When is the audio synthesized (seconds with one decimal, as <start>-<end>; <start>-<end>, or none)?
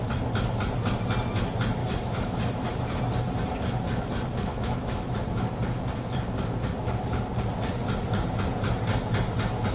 1.8-3.0; 4.5-5.2